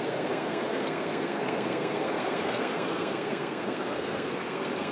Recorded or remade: remade